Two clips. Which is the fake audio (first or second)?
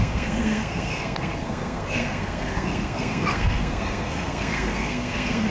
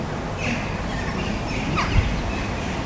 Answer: first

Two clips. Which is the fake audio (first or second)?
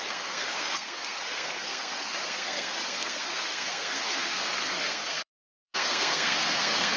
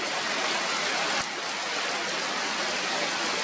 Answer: first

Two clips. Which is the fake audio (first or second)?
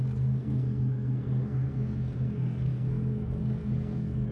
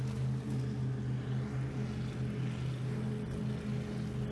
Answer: first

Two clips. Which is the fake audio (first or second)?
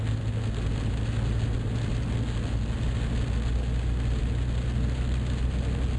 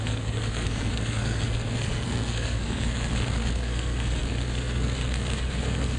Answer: second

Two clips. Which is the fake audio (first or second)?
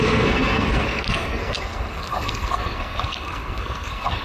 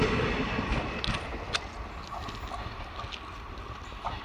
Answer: first